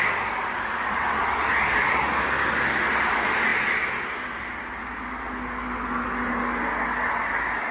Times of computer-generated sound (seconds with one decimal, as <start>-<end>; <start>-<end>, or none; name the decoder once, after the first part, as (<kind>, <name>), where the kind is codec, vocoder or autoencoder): none